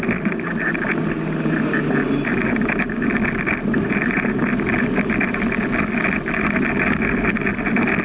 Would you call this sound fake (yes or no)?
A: no